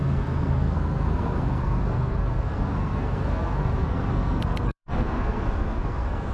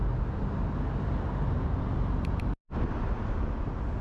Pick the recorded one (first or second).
second